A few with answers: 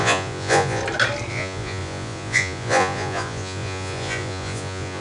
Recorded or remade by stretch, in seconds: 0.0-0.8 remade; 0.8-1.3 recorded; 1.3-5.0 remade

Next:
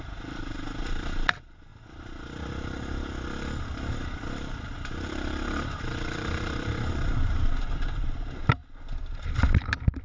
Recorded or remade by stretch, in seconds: 0.0-1.7 remade; 1.7-4.0 recorded; 4.0-8.6 remade; 8.6-9.3 recorded; 9.3-10.0 remade